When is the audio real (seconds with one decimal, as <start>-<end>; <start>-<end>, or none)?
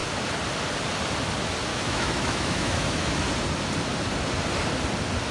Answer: 0.0-1.7; 3.1-5.3